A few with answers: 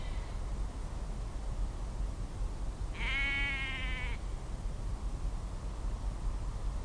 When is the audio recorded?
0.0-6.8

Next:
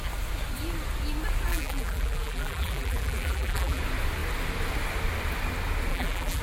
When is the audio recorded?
0.0-1.5; 3.8-5.9

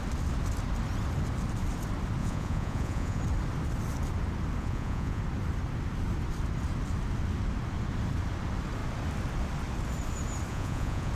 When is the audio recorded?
0.0-2.2; 3.2-4.6; 5.2-10.5

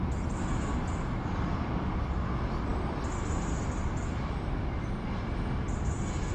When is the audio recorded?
0.0-6.3

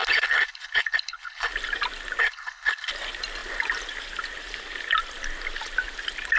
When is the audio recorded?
1.5-2.2; 2.9-6.4

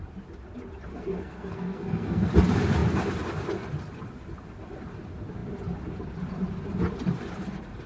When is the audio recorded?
0.0-0.9; 2.3-7.9

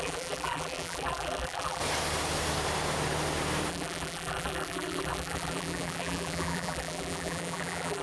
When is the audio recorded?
1.8-3.7

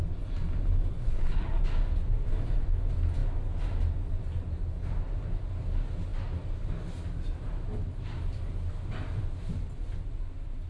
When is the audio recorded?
0.0-1.0; 1.6-10.7